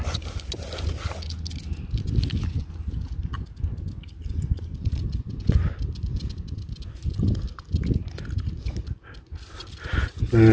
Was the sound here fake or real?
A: real